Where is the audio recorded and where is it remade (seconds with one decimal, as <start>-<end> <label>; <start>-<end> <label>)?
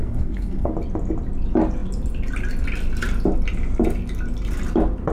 0.0-0.7 remade; 0.7-5.1 recorded